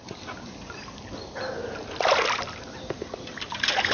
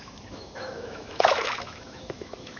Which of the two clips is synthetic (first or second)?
second